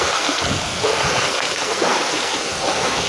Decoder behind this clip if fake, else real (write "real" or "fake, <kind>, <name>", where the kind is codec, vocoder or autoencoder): fake, codec, SNAC